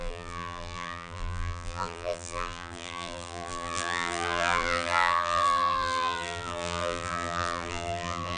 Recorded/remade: remade